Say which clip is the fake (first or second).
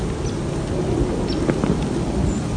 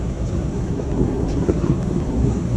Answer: second